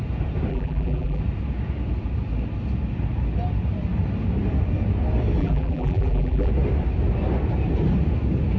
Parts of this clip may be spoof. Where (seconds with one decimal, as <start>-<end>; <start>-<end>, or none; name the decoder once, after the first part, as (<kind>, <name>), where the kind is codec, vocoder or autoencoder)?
0.5-1.2 (vocoder, BigVGAN v2); 5.4-6.5